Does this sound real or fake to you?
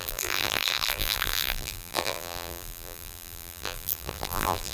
fake